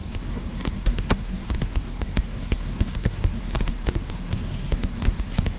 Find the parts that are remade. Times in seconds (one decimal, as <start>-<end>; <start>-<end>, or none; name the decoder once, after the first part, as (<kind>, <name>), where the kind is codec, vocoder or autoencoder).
0.0-5.6 (codec, SNAC)